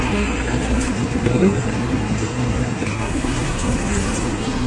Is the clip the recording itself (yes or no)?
no